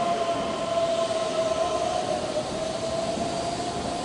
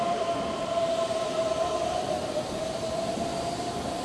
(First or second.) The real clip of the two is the first